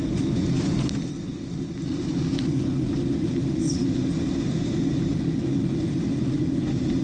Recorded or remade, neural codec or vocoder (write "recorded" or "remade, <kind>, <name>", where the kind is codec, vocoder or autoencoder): recorded